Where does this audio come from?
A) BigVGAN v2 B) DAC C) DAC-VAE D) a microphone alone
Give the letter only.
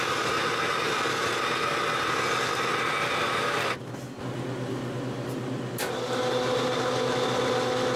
D